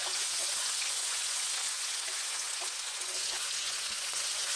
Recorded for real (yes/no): no